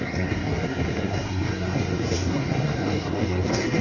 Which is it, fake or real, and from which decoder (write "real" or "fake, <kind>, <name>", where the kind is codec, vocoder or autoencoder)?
fake, codec, SNAC